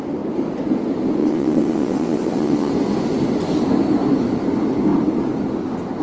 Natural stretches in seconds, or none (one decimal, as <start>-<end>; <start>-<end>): 0.0-1.2; 2.7-6.0